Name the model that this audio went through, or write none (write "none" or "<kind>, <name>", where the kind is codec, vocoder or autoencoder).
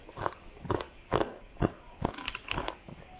codec, DAC